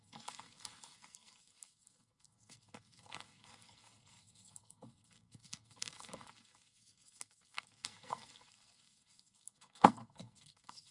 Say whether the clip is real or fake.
fake